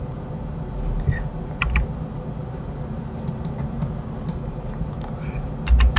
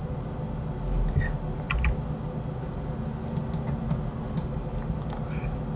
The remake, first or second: first